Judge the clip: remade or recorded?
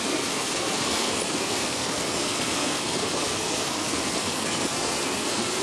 remade